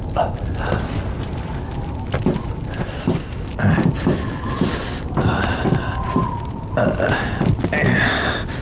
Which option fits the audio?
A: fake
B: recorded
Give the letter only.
B